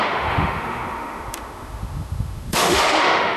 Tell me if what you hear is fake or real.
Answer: fake